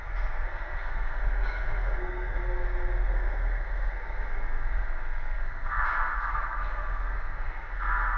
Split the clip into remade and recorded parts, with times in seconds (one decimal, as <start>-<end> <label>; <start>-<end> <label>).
0.0-2.4 remade; 2.4-3.1 recorded; 3.1-8.2 remade